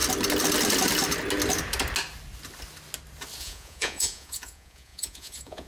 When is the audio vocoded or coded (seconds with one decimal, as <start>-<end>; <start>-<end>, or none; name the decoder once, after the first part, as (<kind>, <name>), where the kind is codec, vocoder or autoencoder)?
3.4-5.7 (vocoder, Vocos)